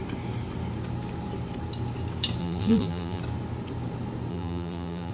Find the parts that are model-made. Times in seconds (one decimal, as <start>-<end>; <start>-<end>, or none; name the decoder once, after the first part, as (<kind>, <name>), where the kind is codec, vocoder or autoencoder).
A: 2.4-3.2 (vocoder, BigVGAN v2); 4.3-5.1